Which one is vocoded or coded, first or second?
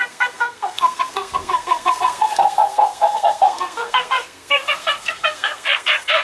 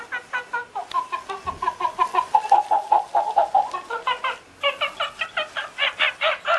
first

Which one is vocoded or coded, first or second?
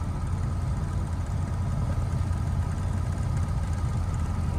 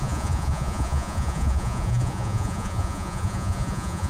second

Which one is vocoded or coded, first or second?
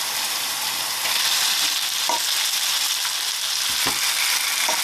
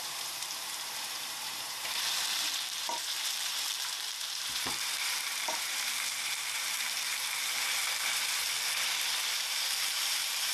second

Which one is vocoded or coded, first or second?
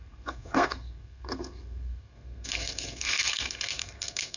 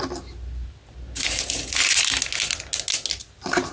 first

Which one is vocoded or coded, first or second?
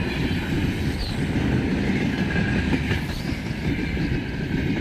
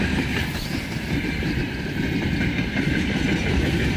second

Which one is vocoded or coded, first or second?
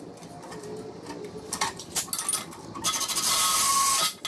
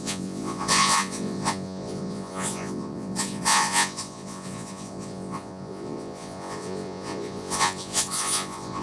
second